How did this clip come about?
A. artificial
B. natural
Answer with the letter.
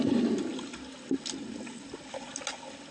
B